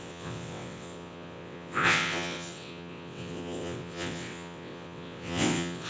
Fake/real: fake